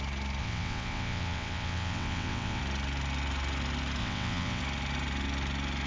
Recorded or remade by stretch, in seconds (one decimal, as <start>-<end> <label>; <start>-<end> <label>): 0.0-0.4 recorded; 0.4-2.6 remade; 2.6-4.0 recorded; 4.0-4.6 remade; 4.6-5.9 recorded